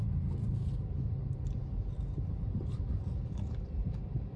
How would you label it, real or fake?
real